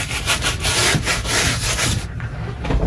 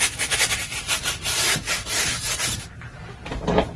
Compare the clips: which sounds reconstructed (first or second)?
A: second